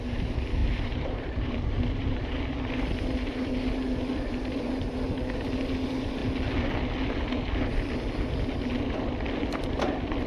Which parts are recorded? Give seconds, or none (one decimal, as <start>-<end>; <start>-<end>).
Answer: 0.0-0.6; 2.2-10.3